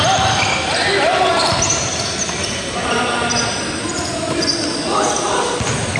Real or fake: real